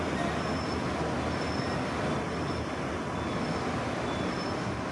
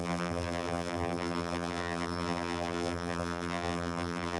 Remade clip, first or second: second